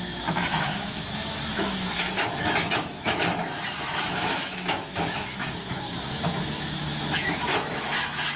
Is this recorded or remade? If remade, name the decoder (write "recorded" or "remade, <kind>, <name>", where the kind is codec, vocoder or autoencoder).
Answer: remade, autoencoder, DAC-VAE